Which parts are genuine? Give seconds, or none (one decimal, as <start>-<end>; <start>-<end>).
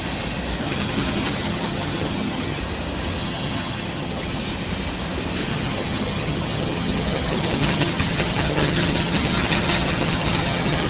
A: 0.0-0.6; 2.6-3.2; 4.4-5.4